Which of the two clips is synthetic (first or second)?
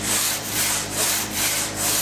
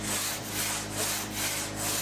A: first